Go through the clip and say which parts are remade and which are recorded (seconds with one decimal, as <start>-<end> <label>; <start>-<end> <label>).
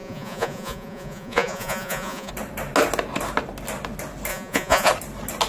0.0-2.3 remade; 2.3-4.3 recorded; 4.3-4.9 remade; 4.9-5.5 recorded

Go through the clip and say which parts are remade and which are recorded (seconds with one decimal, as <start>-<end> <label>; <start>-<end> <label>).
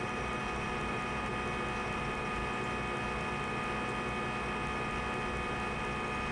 0.0-1.3 remade; 1.3-2.0 recorded; 2.0-2.4 remade; 2.4-6.3 recorded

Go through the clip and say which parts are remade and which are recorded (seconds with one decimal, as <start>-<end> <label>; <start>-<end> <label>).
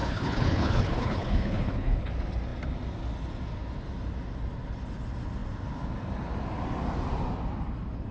0.0-2.1 remade; 2.1-8.1 recorded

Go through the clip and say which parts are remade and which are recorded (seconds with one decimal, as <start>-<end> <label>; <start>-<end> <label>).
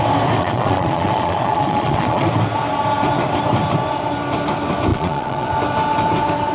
0.0-0.4 recorded; 0.4-2.3 remade; 2.3-4.9 recorded; 4.9-5.5 remade; 5.5-6.5 recorded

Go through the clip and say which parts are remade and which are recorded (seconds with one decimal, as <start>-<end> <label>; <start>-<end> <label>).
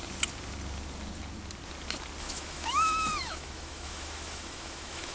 0.0-2.2 recorded; 2.2-5.1 remade